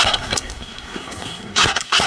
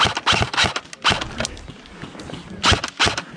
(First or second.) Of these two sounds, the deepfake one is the first